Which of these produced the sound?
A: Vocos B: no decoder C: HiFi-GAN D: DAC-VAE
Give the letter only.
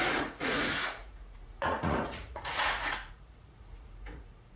A